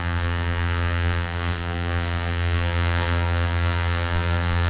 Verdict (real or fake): fake